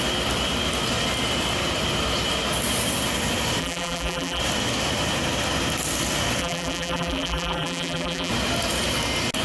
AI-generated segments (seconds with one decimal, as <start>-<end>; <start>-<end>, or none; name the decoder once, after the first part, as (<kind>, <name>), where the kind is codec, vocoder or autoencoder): 3.6-4.4 (vocoder, BigVGAN v2); 6.4-8.3